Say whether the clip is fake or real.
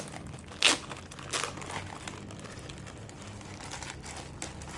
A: real